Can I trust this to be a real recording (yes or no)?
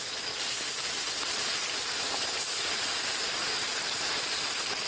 no